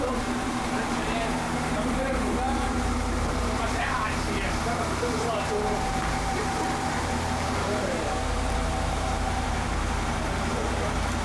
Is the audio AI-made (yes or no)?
yes